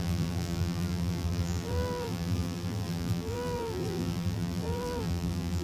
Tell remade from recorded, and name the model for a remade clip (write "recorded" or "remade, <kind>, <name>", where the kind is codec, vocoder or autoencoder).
remade, vocoder, BigVGAN v2